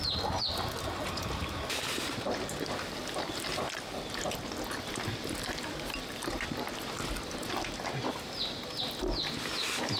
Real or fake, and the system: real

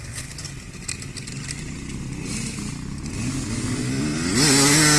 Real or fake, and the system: real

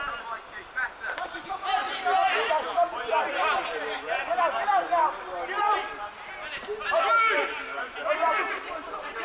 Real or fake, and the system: real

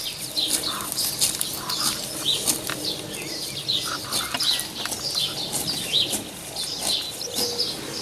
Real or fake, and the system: real